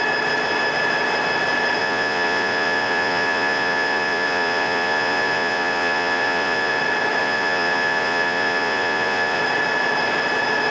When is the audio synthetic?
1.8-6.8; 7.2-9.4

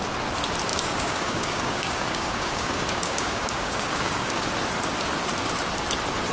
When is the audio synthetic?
0.7-4.5

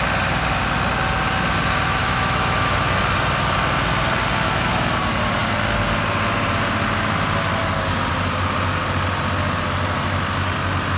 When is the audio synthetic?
2.0-3.0

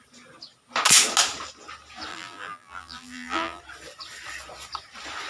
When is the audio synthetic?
2.1-3.6

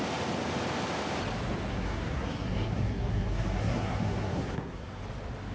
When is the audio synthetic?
1.7-5.0